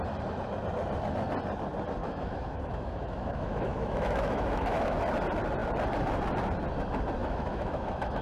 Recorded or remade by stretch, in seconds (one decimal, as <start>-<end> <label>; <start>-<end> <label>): 0.0-2.0 recorded; 2.0-5.0 remade; 5.0-7.2 recorded; 7.2-8.2 remade